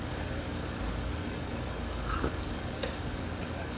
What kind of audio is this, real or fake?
fake